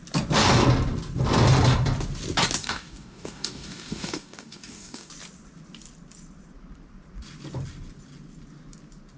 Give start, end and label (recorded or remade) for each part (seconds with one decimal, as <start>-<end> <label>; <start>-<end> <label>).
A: 0.0-2.6 recorded; 2.6-5.1 remade; 5.1-9.2 recorded